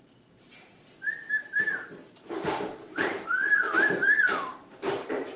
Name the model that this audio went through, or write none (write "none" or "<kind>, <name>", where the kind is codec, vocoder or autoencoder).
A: vocoder, BigVGAN v2